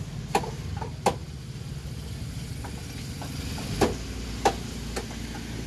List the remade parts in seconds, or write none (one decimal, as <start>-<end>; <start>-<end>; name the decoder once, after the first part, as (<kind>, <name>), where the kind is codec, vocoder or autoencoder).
none